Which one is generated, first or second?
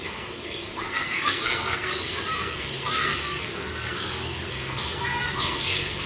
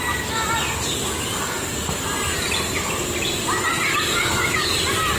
first